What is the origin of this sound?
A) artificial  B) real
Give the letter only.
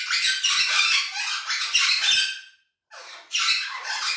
B